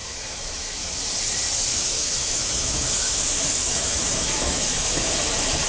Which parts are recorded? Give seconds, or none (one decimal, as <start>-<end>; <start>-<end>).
0.9-1.7; 5.1-5.7